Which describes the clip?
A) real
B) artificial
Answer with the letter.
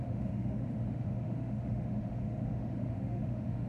B